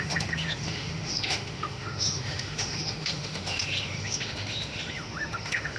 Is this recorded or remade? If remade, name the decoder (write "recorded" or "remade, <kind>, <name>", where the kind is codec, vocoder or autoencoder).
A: remade, autoencoder, DAC-VAE